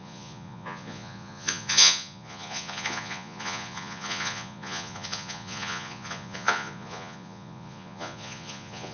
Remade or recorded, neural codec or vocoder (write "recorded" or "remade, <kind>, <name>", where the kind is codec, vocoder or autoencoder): remade, vocoder, Vocos